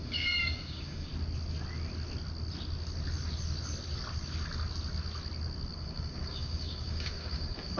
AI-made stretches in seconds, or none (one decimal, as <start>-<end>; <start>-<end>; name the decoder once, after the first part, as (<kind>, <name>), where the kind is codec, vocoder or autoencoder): 0.0-1.1 (codec, DAC); 5.7-7.8